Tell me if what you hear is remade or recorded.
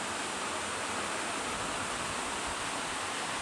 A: recorded